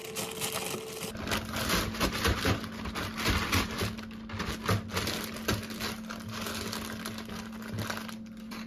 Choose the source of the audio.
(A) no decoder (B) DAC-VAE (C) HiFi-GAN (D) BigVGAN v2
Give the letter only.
A